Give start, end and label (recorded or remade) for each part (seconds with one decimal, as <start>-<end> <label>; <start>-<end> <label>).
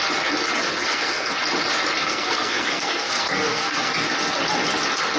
0.0-0.6 recorded; 0.6-1.3 remade; 1.3-2.0 recorded; 2.0-3.9 remade; 3.9-5.2 recorded